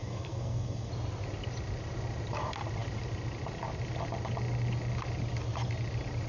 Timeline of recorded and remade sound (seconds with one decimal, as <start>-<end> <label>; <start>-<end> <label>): 0.0-0.9 remade; 0.9-6.3 recorded